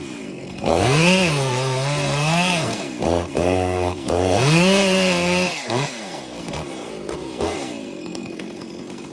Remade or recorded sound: remade